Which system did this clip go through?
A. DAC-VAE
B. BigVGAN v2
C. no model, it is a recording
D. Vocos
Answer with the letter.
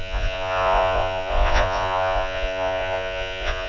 D